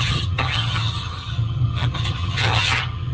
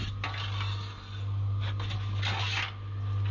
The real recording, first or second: second